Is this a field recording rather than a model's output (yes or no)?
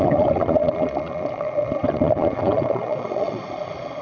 no